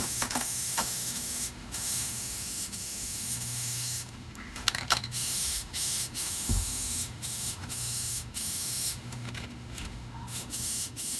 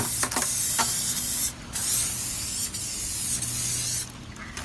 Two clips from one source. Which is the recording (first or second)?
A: second